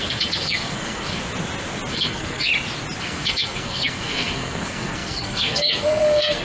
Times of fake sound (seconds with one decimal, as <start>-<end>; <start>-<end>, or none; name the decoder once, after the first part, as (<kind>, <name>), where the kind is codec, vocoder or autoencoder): 0.0-1.2 (codec, SNAC); 1.9-2.5; 3.0-6.4